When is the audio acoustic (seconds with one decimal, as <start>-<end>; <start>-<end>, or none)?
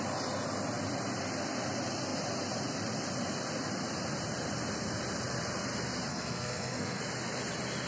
0.0-6.1; 7.0-7.9